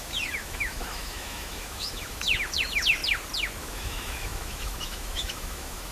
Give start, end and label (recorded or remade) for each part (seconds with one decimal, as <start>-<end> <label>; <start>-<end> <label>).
0.0-3.0 remade; 3.0-3.6 recorded; 3.6-5.9 remade